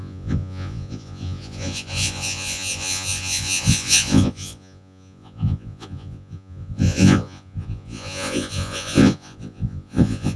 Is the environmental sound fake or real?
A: fake